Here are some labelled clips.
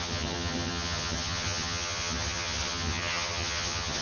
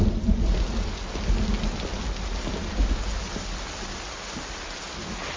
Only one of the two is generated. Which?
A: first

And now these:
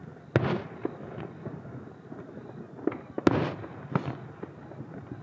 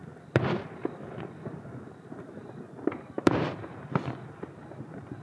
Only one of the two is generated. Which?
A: second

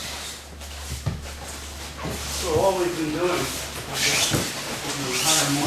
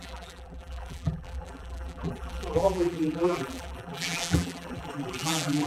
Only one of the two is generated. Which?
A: second